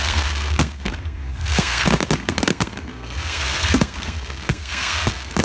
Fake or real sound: fake